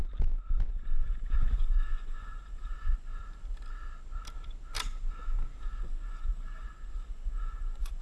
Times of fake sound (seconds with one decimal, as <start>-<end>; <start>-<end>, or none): 0.7-3.1; 5.8-8.0